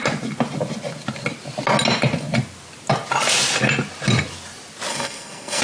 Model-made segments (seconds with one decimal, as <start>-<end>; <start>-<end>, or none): 4.9-5.6